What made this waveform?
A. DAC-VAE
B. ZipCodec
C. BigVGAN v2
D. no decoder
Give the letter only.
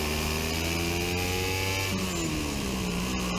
D